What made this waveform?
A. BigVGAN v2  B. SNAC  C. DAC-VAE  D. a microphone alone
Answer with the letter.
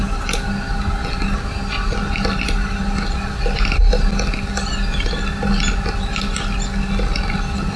D